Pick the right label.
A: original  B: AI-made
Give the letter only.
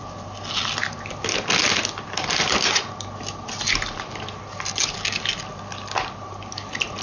A